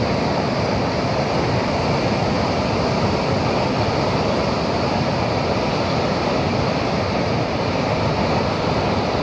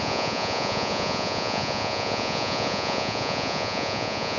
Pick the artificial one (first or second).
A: second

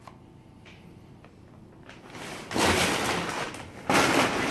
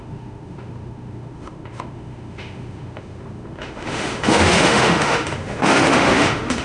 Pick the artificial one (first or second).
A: second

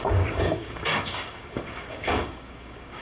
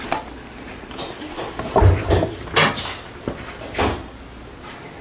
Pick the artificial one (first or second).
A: first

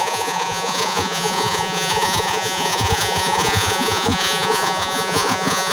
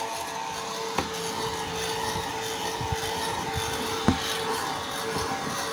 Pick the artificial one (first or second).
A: first